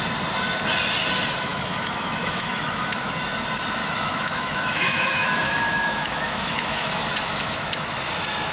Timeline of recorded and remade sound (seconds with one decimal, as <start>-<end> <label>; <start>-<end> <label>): 0.0-1.5 recorded; 1.5-3.0 remade; 3.0-3.8 recorded; 3.8-8.1 remade; 8.1-8.5 recorded